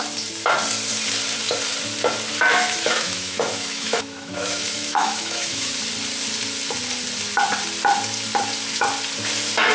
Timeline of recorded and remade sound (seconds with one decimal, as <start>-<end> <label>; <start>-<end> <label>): 0.0-2.5 recorded; 2.5-5.7 remade; 5.7-9.7 recorded